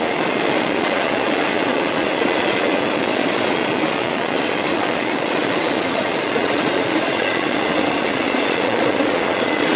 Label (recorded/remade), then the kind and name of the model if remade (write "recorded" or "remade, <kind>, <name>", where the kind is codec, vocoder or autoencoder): remade, vocoder, Vocos